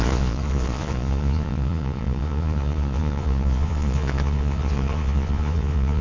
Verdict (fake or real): fake